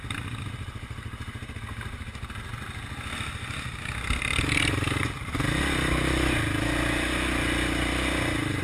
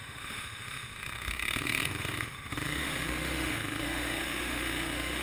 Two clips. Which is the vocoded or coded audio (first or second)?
second